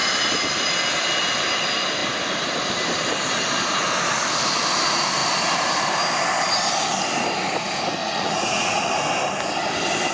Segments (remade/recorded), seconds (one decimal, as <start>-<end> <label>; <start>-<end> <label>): 0.0-8.0 recorded; 8.0-8.9 remade; 8.9-10.1 recorded